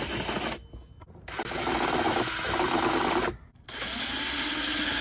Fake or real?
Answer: real